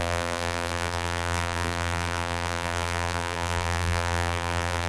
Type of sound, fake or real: fake